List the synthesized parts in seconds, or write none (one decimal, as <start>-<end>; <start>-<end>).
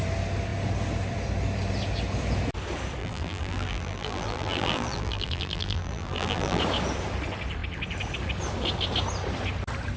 3.0-6.6